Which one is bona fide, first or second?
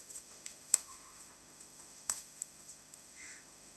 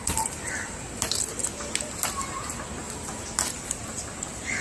second